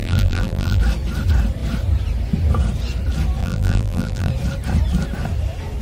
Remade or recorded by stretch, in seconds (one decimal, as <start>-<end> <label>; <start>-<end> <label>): 0.0-0.8 remade; 0.8-3.4 recorded; 3.4-4.3 remade; 4.3-5.8 recorded

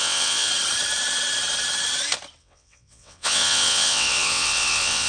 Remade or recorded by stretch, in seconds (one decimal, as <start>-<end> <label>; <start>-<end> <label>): 0.0-0.5 remade; 0.5-2.4 recorded; 2.4-5.1 remade

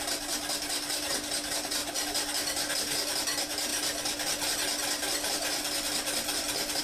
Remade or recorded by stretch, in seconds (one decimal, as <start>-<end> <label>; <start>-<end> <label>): 0.0-6.8 recorded

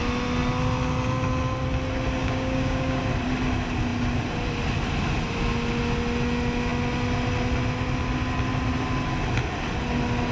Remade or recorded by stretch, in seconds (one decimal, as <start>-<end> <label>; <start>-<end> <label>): 0.0-2.2 recorded; 2.2-3.0 remade; 3.0-10.3 recorded

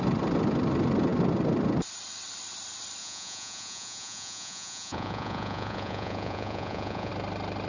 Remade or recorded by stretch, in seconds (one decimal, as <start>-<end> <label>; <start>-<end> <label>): 0.0-3.0 recorded; 3.0-7.1 remade; 7.1-7.7 recorded